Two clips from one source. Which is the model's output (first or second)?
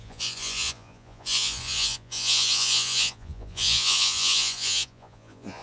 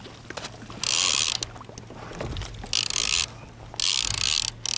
first